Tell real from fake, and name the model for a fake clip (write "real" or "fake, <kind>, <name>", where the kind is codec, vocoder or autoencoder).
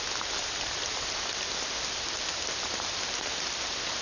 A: real